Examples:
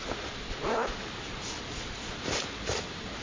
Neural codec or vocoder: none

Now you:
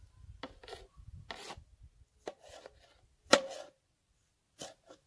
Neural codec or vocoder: none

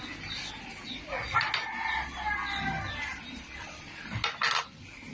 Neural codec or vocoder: none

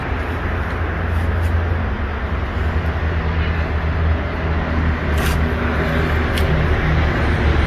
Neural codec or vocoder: none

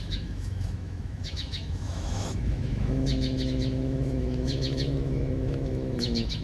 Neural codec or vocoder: autoencoder, DAC-VAE